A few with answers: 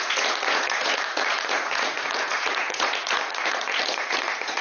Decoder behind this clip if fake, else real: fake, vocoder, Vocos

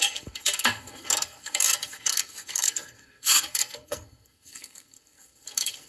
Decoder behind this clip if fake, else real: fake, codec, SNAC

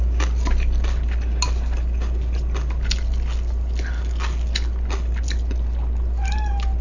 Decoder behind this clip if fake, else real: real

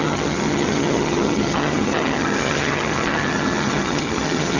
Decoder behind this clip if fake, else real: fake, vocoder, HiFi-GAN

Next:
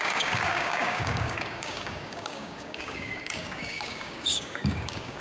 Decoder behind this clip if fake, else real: fake, codec, DAC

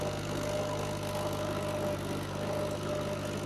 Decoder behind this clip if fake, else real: real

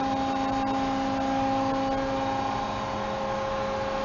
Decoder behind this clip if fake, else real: real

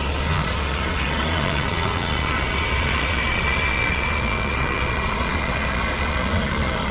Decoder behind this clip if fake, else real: fake, vocoder, Vocos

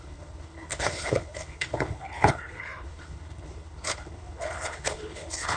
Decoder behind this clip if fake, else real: fake, codec, HILCodec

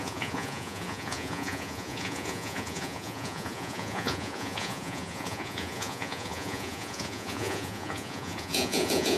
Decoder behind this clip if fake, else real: fake, vocoder, Vocos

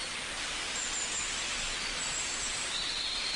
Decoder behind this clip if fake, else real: real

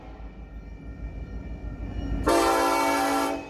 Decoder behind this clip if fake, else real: real